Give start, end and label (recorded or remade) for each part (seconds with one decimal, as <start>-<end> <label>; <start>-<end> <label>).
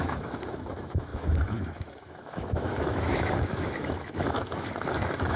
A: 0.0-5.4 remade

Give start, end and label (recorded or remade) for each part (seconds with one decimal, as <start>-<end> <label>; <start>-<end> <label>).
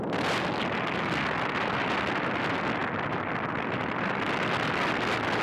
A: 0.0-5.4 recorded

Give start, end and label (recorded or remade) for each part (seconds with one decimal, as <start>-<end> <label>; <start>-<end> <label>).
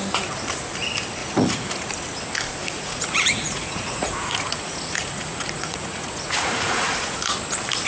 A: 0.0-1.2 recorded; 1.2-1.9 remade; 1.9-2.6 recorded; 2.6-7.3 remade; 7.3-7.9 recorded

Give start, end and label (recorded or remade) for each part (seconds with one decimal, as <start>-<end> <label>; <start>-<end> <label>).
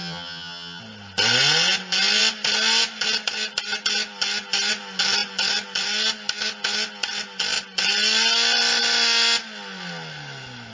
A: 0.0-0.8 remade; 0.8-10.7 recorded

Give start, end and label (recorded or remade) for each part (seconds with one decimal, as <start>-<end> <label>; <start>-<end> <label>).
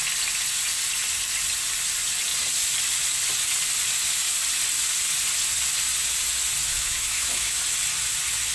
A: 0.0-6.7 recorded; 6.7-7.6 remade; 7.6-8.5 recorded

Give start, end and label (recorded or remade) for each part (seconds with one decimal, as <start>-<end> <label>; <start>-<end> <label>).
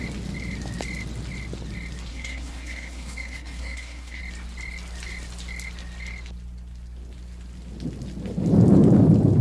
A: 0.0-2.1 recorded; 2.1-4.2 remade; 4.2-9.4 recorded